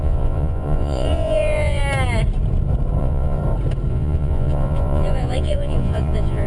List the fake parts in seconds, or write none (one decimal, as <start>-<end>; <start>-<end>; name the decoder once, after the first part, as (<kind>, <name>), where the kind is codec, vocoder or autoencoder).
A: 0.0-1.8 (vocoder, Vocos); 3.0-3.4; 3.9-6.5